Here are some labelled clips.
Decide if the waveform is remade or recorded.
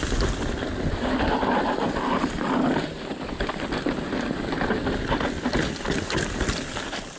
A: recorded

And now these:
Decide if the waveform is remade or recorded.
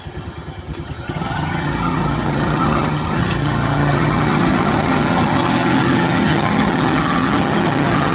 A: remade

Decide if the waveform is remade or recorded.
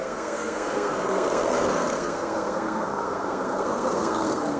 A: remade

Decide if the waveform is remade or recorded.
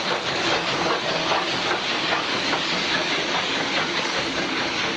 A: remade